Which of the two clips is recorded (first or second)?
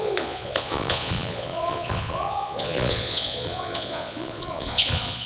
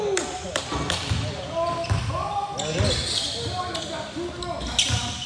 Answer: second